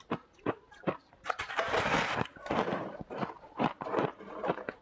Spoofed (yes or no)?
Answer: yes